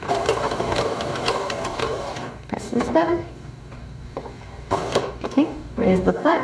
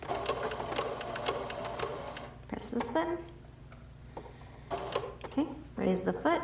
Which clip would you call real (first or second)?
second